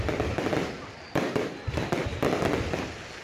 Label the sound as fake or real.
real